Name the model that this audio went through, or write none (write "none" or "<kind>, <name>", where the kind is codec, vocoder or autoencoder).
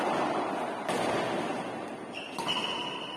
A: none